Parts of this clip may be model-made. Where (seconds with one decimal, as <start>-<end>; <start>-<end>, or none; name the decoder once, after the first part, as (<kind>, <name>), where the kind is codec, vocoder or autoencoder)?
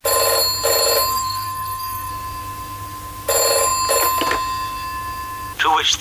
1.1-2.1 (codec, SNAC)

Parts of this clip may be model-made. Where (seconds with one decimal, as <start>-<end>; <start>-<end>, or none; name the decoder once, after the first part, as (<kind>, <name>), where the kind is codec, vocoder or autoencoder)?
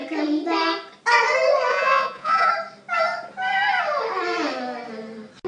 1.7-2.5 (vocoder, Vocos)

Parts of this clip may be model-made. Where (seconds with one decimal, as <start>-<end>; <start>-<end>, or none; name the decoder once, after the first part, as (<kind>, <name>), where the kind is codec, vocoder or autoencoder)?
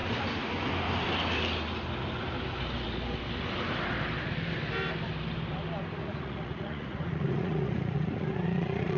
6.0-9.0 (vocoder, Vocos)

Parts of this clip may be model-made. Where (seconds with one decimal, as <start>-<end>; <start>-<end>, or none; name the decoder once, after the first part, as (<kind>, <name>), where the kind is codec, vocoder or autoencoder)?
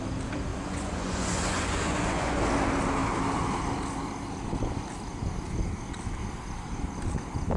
0.5-2.4 (vocoder, Vocos)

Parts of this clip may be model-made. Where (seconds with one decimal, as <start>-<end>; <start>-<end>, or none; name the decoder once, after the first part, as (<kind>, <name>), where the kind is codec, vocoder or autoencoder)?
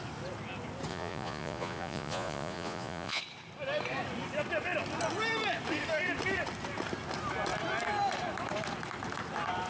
0.9-3.2 (vocoder, Vocos)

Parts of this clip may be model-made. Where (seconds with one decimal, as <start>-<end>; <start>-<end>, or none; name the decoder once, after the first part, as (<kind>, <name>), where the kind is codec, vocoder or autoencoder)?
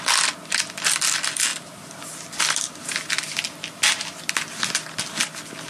1.5-2.9 (vocoder, BigVGAN v2)